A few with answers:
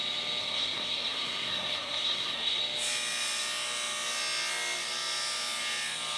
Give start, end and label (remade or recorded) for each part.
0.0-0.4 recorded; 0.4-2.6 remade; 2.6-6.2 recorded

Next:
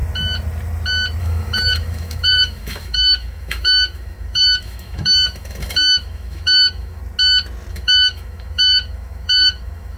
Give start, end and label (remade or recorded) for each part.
0.0-1.2 recorded; 1.2-7.0 remade; 7.0-7.7 recorded; 7.7-10.0 remade

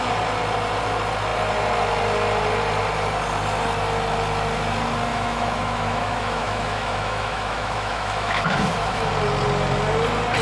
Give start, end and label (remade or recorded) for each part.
0.0-5.1 recorded; 5.1-9.1 remade; 9.1-10.4 recorded

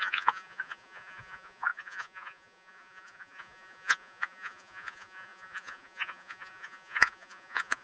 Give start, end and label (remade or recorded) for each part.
0.0-7.8 remade

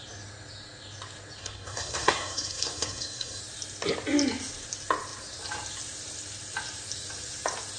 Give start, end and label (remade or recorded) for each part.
0.0-1.4 recorded; 1.4-3.4 remade; 3.4-7.8 recorded